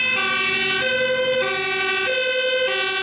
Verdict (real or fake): real